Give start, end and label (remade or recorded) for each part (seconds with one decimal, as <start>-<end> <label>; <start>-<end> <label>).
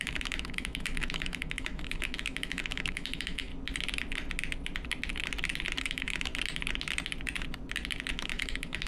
0.0-3.5 remade; 3.5-5.8 recorded; 5.8-6.3 remade; 6.3-8.1 recorded; 8.1-8.9 remade